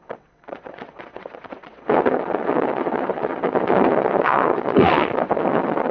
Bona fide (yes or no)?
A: no